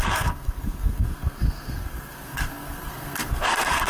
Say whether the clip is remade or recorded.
remade